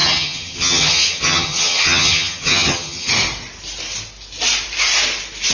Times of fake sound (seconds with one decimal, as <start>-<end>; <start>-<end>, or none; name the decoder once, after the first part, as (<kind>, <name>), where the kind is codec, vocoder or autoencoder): 0.0-3.1 (vocoder, HiFi-GAN)